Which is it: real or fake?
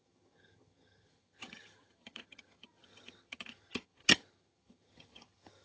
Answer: fake